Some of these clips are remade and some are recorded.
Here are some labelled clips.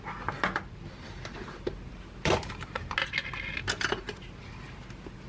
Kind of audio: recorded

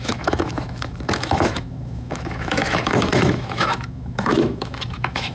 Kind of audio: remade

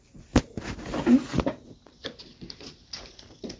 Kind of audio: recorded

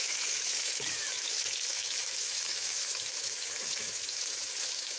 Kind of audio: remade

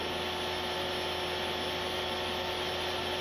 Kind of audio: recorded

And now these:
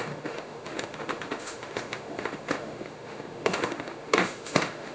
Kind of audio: remade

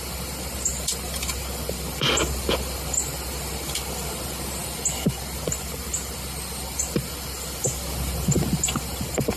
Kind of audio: recorded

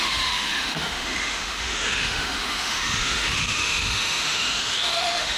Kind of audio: remade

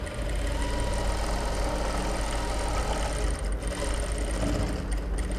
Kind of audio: recorded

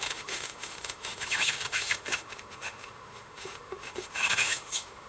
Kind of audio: remade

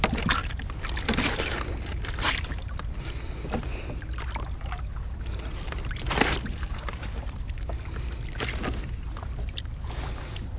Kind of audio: recorded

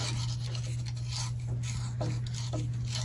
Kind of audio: recorded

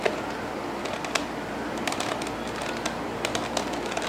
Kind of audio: recorded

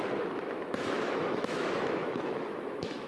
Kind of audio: remade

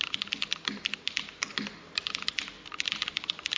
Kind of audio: recorded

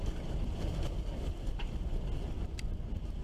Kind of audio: recorded